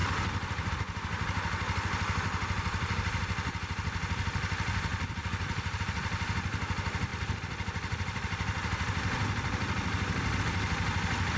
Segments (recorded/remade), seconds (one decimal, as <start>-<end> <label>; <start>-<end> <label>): 0.0-4.9 recorded; 4.9-5.8 remade; 5.8-7.1 recorded; 7.1-10.4 remade; 10.4-11.4 recorded